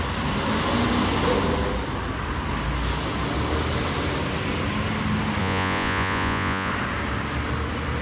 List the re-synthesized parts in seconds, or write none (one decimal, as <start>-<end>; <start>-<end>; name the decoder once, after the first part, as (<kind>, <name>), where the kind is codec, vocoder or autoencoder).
5.4-6.7 (vocoder, Vocos)